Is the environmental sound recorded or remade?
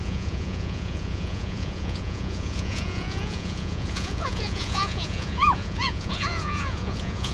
remade